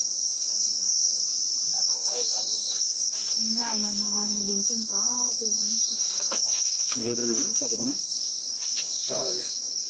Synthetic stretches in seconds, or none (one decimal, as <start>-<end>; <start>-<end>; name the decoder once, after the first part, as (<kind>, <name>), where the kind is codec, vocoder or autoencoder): 0.0-1.2 (codec, DAC); 1.8-9.9